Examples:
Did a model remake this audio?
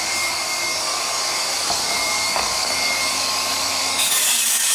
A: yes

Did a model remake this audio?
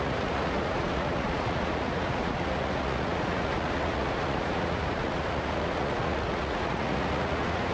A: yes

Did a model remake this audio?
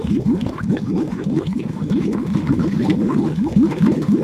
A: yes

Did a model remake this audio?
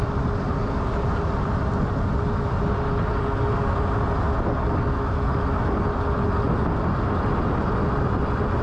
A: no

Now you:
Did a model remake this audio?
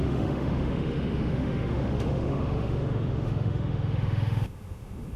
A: yes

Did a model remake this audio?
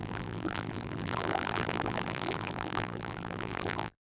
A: yes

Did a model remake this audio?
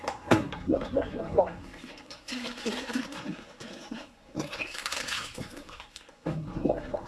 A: yes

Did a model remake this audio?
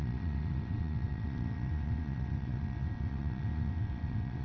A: yes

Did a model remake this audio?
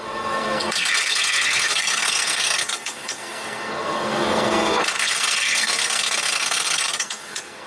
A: yes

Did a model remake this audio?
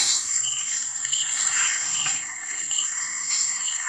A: yes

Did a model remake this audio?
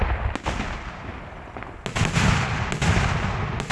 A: no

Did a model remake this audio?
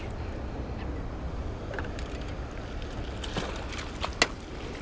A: no